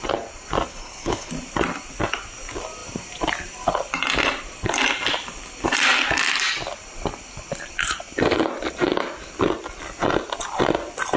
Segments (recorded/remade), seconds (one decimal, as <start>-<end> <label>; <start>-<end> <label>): 0.0-0.7 recorded; 0.7-1.3 remade; 1.3-11.2 recorded